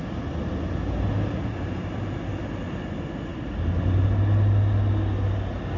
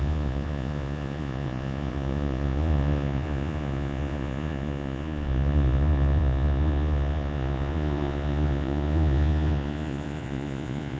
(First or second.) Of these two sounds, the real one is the first